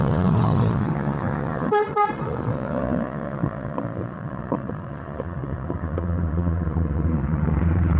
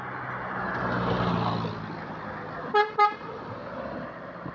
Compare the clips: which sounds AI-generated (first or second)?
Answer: first